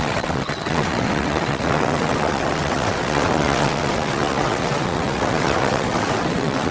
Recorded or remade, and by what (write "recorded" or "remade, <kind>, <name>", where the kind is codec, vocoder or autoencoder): remade, vocoder, WaveNeXt